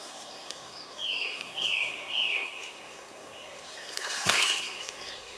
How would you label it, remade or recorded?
remade